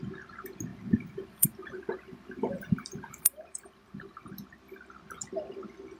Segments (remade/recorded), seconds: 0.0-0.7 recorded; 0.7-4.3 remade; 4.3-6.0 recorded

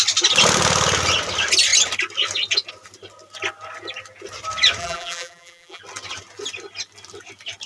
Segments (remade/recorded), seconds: 0.0-4.8 recorded; 4.8-5.8 remade; 5.8-7.7 recorded

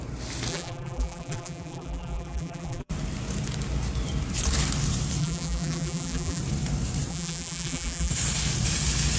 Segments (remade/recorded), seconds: 0.0-0.5 recorded; 0.5-2.9 remade; 2.9-5.2 recorded; 5.2-6.4 remade; 6.4-7.1 recorded; 7.1-8.1 remade; 8.1-9.2 recorded

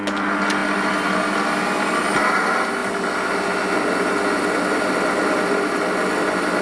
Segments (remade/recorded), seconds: 0.0-6.6 recorded

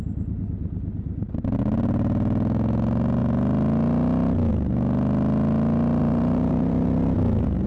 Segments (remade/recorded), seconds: 0.0-6.0 recorded; 6.0-7.7 remade

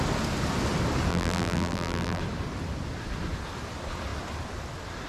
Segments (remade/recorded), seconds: 0.0-1.1 recorded; 1.1-2.2 remade; 2.2-5.1 recorded